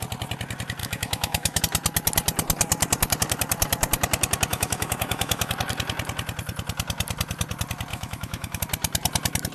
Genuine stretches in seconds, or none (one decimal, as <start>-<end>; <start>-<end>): 0.0-0.8; 1.6-4.5; 5.5-7.9; 8.6-9.5